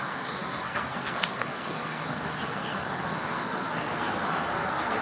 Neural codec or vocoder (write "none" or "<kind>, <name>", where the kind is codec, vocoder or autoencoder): codec, SNAC